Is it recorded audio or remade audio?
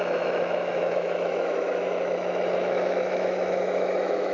remade